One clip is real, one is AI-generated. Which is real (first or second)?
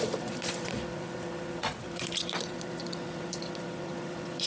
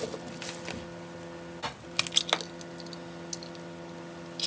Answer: second